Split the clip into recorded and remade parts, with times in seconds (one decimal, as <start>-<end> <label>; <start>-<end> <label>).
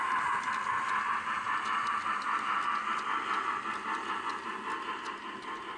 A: 0.0-5.8 recorded